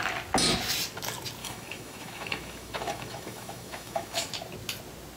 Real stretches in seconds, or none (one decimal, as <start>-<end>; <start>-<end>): 0.0-1.4; 4.3-5.2

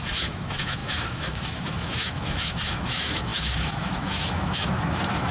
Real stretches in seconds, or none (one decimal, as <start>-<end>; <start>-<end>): none

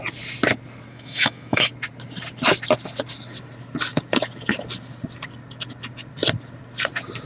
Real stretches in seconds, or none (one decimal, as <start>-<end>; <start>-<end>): 0.0-0.9; 1.7-7.3

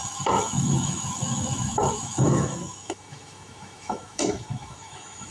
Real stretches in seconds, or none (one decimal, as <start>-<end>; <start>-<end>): none

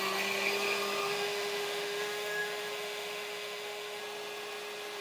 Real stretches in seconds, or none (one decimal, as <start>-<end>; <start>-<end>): 0.0-1.0; 4.0-5.0

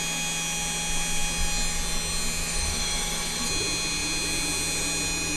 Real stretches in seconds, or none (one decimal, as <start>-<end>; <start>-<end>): 0.0-2.4; 3.5-5.4

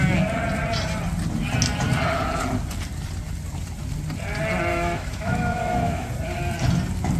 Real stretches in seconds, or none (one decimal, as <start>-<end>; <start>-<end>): 0.0-4.7; 6.1-7.2